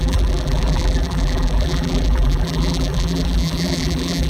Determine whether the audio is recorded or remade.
remade